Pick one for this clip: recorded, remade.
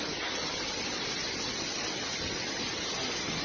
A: recorded